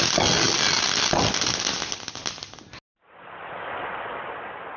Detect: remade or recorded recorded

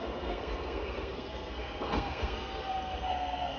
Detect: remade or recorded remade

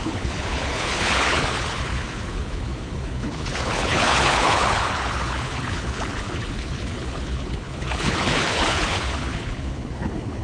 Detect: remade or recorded remade